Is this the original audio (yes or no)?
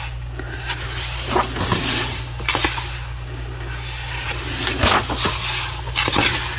yes